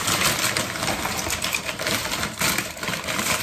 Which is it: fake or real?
fake